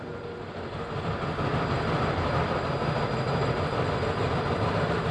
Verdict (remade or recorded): recorded